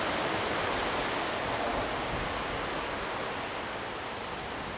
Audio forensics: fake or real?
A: real